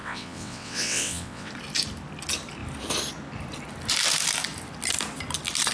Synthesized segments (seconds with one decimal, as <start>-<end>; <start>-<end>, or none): 0.0-1.5